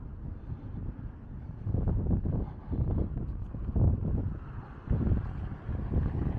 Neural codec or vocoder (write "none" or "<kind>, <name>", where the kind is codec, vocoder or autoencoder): none